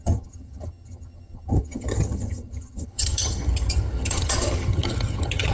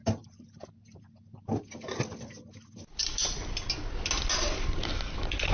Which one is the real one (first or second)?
second